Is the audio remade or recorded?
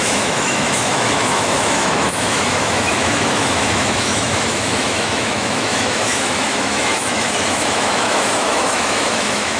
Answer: remade